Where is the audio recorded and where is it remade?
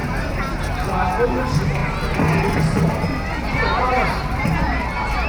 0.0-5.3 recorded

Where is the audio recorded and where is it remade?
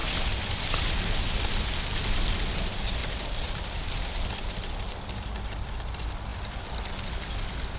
0.0-7.8 recorded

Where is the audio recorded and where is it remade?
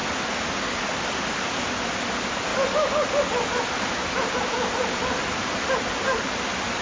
0.0-6.8 recorded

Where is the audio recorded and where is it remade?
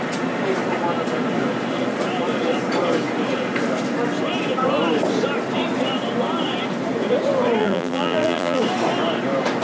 0.0-7.6 recorded; 7.6-8.6 remade; 8.6-9.6 recorded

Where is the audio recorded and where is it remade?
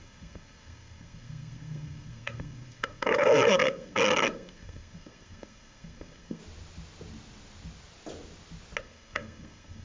0.0-6.4 remade; 6.4-8.8 recorded; 8.8-9.8 remade